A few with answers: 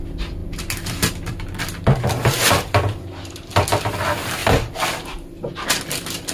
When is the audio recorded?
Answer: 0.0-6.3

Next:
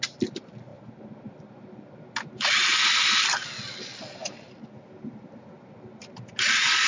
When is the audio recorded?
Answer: 0.0-6.9

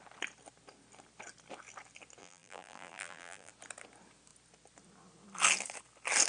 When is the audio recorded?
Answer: 0.0-2.2; 3.5-6.3